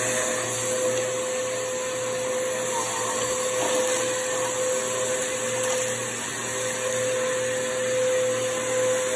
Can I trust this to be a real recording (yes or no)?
yes